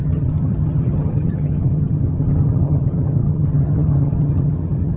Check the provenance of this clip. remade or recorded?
remade